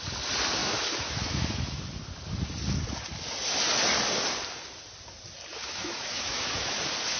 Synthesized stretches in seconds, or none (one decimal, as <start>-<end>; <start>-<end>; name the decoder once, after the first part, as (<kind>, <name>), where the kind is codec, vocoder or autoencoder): 0.6-1.8 (autoencoder, DAC-VAE); 5.5-6.8